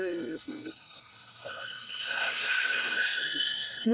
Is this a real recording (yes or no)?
no